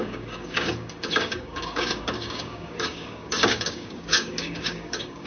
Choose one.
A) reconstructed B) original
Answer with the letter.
A